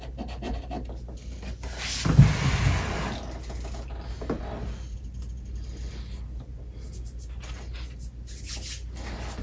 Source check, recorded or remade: recorded